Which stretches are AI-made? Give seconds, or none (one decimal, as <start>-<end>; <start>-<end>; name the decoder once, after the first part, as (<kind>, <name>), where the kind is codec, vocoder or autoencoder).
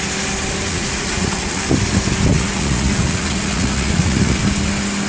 0.7-1.6 (vocoder, Vocos); 2.3-4.4